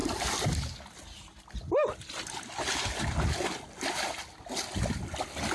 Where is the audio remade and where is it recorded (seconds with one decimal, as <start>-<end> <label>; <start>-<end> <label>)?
0.0-5.5 recorded